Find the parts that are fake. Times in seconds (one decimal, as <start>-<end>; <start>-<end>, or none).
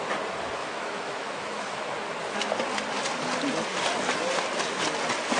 0.6-1.8